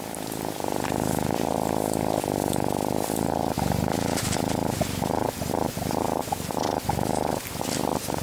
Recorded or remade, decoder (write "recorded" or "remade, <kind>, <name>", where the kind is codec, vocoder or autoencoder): recorded